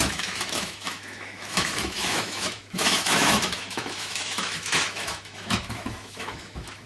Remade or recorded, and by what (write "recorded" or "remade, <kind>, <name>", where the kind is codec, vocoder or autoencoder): remade, autoencoder, DAC-VAE